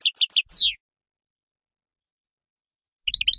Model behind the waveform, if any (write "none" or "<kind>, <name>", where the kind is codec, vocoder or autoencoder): none